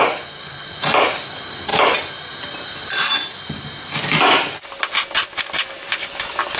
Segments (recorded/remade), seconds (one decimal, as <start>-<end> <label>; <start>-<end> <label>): 0.0-6.6 recorded